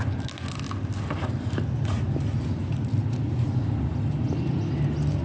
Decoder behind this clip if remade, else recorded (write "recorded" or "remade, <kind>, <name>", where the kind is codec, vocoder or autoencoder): recorded